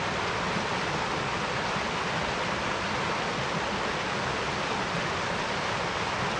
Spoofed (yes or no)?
no